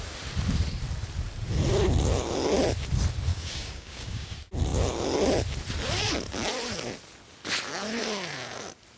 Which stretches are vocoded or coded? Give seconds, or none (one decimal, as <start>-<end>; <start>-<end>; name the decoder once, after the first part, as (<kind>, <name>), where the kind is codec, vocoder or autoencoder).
3.3-4.3 (codec, DAC)